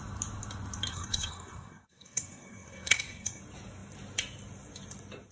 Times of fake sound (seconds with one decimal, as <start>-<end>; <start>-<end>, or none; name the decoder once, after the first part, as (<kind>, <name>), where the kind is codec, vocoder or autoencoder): 0.9-3.4 (codec, SNAC)